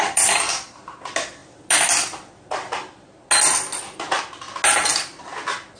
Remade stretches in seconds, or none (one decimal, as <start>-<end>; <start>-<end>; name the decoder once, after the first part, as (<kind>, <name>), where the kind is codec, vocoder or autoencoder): none

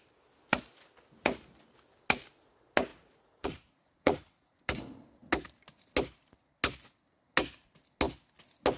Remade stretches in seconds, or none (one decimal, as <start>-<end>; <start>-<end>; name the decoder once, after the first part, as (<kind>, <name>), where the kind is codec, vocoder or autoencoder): 2.9-4.6 (vocoder, Vocos)

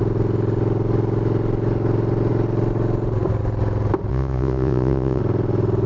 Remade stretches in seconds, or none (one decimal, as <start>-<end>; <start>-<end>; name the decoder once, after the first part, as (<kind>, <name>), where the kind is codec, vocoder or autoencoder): 4.1-5.2 (vocoder, Vocos)

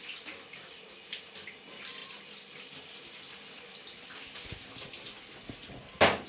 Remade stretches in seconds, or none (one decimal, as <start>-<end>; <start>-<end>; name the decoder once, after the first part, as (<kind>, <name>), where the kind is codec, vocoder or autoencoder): none

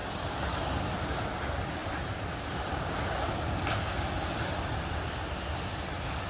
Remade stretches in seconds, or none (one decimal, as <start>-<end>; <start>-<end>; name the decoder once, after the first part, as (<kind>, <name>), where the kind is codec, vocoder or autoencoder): none

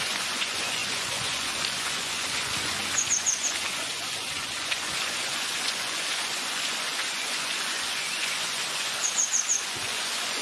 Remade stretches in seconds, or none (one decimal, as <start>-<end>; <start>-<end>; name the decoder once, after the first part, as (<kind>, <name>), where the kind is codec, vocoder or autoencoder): 0.0-10.4 (vocoder, Vocos)